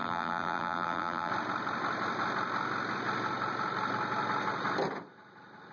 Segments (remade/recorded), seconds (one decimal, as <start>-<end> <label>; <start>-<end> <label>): 0.0-1.3 remade; 1.3-5.7 recorded